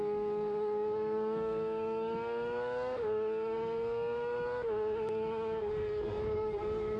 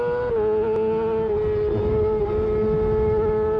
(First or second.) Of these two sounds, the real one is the second